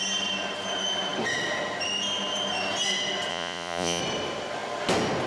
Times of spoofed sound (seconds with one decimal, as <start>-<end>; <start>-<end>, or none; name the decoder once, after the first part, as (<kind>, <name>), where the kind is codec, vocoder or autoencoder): 3.3-4.0 (vocoder, Vocos)